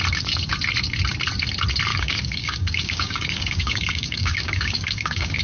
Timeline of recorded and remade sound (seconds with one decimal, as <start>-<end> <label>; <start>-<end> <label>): 0.0-1.9 recorded; 1.9-5.4 remade